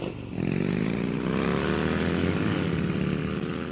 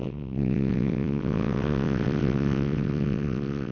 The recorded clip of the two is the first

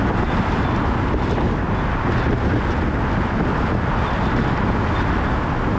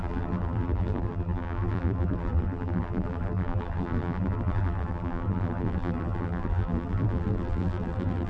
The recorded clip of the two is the first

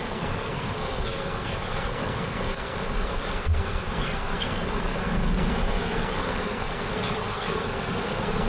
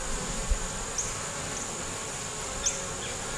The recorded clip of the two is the second